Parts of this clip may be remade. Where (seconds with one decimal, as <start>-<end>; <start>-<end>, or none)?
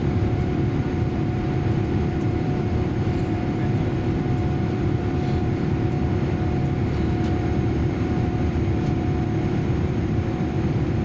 0.0-11.0